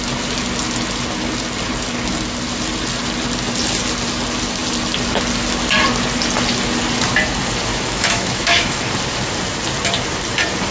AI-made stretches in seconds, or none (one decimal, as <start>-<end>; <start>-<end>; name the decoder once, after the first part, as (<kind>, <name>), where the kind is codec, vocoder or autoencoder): 7.7-8.8 (autoencoder, DAC-VAE)